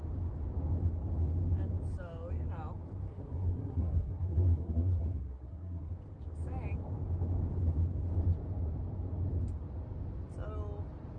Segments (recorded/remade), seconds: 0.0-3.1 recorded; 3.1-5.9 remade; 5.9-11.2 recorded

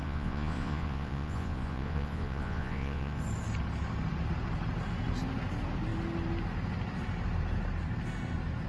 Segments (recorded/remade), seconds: 0.0-3.2 remade; 3.2-8.7 recorded

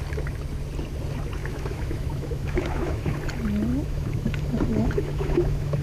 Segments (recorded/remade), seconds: 0.0-1.4 recorded; 1.4-3.2 remade; 3.2-3.7 recorded; 3.7-4.3 remade; 4.3-4.7 recorded; 4.7-5.8 remade

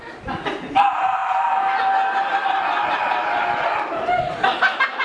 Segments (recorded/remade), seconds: 0.0-1.2 remade; 1.2-2.9 recorded; 2.9-5.0 remade